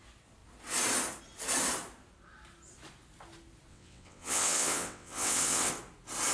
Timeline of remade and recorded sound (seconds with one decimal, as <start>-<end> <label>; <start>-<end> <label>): 0.0-3.7 recorded; 3.7-5.7 remade; 5.7-6.3 recorded